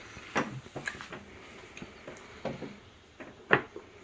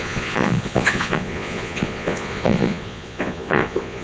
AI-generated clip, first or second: second